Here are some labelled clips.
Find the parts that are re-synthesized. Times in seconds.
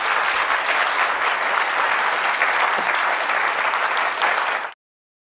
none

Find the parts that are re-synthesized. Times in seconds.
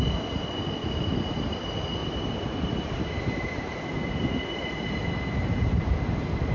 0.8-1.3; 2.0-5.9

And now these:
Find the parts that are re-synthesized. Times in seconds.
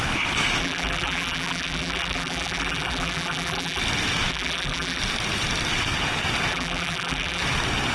0.6-3.8; 4.3-5.0; 6.5-7.4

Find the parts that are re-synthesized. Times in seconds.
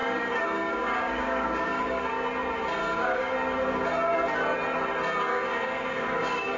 0.0-2.1; 2.8-3.3; 5.3-6.6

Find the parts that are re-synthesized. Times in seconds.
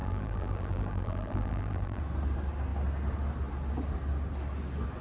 0.0-2.0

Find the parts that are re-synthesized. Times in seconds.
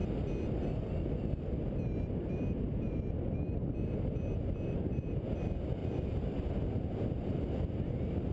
none